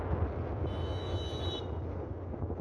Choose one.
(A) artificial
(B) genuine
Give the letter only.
B